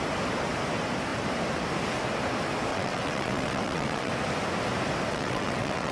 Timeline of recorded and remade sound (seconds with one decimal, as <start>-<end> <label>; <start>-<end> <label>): 0.0-2.7 recorded; 2.7-4.1 remade; 4.1-5.1 recorded; 5.1-5.9 remade